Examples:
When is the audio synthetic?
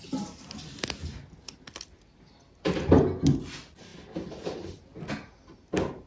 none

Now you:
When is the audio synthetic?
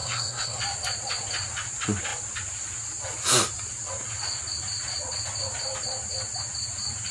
0.0-0.6 (codec, SNAC)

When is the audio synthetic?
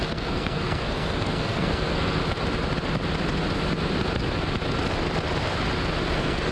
0.0-2.2 (codec, SNAC); 6.1-6.5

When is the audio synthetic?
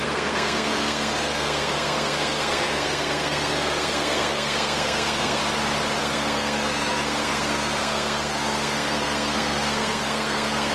0.0-5.4 (codec, SNAC); 6.0-10.7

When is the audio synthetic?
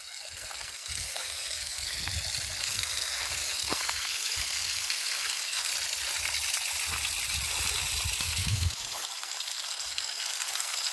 0.0-2.1 (codec, SNAC); 2.6-5.7; 8.2-10.9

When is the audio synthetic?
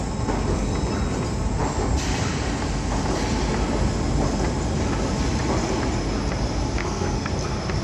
6.8-7.3 (codec, SNAC)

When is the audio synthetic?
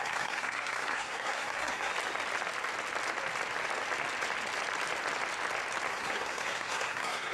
0.0-1.9 (codec, SNAC); 5.9-7.3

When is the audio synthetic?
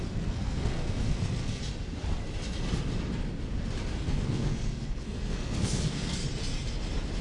0.0-1.6 (codec, SNAC); 4.0-6.2